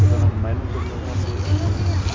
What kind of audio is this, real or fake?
real